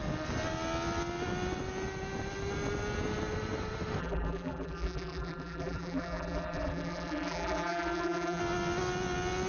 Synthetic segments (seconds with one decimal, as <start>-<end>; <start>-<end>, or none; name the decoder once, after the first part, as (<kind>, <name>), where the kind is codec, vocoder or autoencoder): 4.0-8.4 (vocoder, BigVGAN v2)